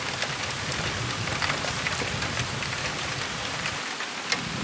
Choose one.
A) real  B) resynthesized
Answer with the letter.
A